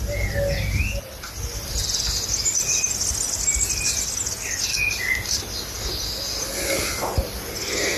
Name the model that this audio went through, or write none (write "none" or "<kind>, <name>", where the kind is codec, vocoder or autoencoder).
none